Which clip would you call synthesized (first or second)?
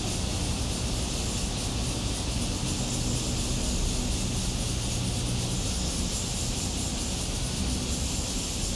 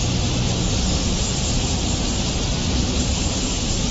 second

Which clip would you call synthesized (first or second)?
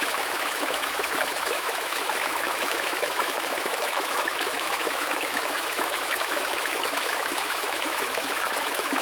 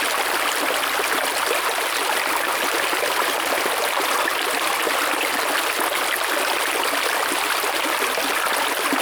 first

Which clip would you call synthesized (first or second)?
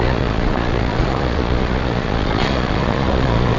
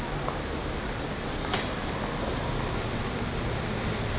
first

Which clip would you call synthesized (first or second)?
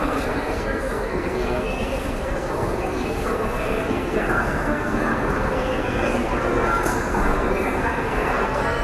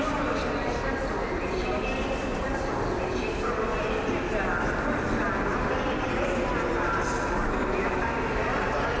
first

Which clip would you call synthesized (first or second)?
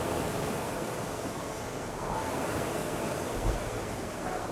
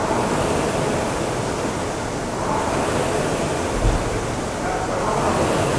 first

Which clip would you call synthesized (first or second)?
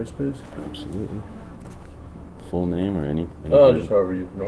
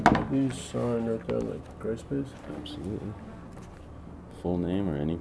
first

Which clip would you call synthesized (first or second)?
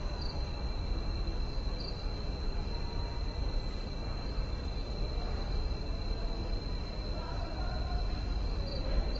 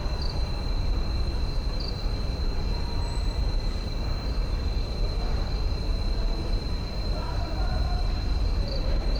second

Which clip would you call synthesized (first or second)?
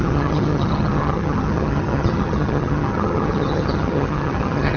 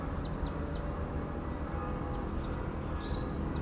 first